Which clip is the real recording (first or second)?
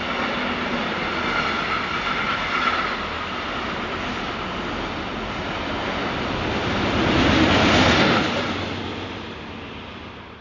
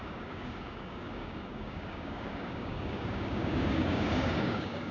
first